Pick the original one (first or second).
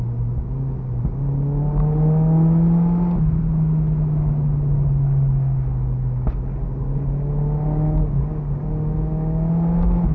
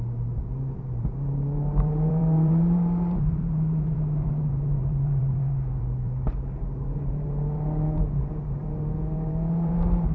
first